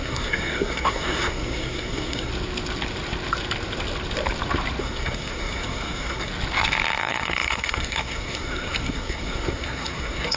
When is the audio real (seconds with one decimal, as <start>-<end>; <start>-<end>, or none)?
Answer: 2.3-4.8; 6.3-7.0